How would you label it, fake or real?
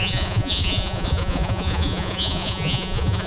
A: fake